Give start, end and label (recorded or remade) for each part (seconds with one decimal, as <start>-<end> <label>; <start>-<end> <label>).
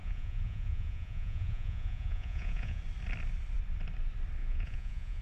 0.0-2.8 remade; 2.8-4.4 recorded; 4.4-5.2 remade